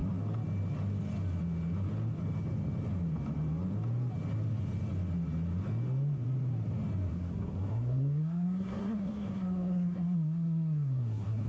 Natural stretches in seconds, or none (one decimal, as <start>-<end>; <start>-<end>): 0.0-7.1